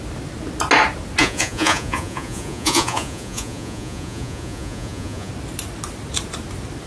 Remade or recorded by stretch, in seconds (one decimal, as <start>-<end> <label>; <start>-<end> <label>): 0.0-1.2 recorded; 1.2-5.3 remade; 5.3-6.9 recorded